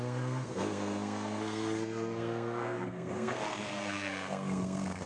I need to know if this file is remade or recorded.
remade